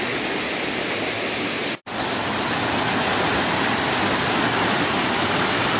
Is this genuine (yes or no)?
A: yes